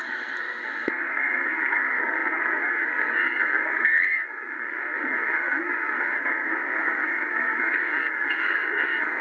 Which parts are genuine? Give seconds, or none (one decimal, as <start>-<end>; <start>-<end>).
none